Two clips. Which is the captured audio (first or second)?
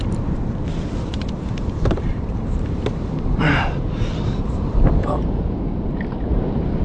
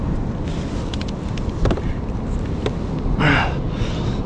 second